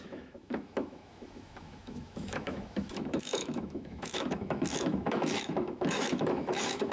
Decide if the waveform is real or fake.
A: fake